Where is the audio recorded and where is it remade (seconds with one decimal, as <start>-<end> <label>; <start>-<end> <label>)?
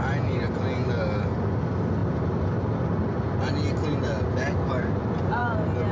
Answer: 0.0-5.9 recorded